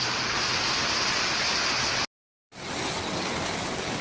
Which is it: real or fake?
real